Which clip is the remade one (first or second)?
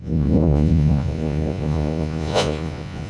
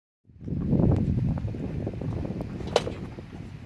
first